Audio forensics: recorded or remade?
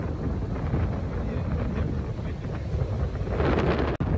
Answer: recorded